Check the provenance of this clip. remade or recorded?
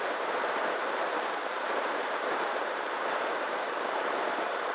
remade